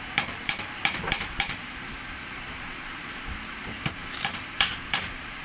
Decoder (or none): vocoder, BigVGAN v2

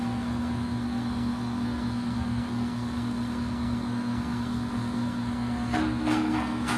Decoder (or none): codec, SNAC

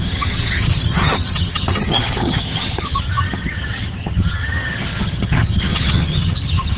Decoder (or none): vocoder, HiFi-GAN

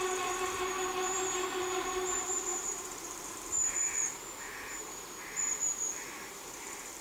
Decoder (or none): vocoder, BigVGAN v2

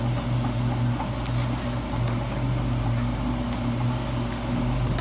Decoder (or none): none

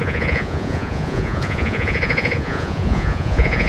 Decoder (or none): vocoder, Vocos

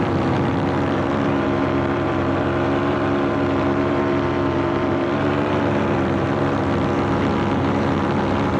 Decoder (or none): vocoder, BigVGAN v2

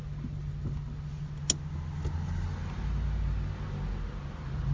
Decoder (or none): none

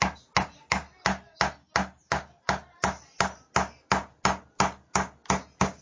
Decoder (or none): none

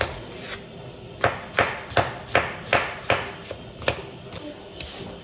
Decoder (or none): none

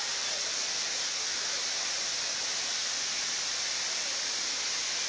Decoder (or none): none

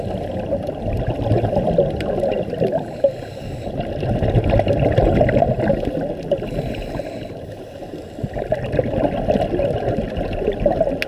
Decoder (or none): none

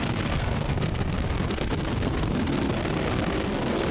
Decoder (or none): codec, SNAC